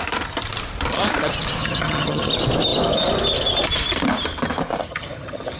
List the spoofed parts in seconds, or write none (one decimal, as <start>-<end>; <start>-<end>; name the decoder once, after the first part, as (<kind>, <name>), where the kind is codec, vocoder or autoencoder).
1.6-2.3 (vocoder, HiFi-GAN); 4.8-5.6